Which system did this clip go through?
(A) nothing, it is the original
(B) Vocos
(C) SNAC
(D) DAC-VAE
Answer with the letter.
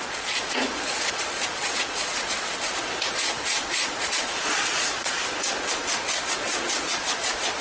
B